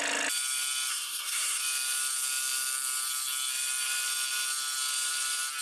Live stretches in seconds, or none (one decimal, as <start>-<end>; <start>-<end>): 0.0-0.9; 1.6-5.6